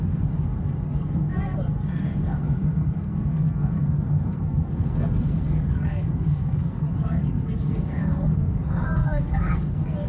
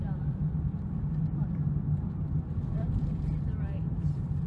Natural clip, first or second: second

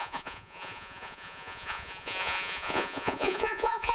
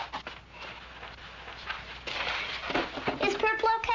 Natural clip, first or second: second